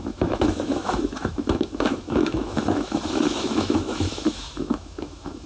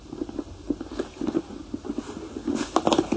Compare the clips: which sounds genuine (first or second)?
second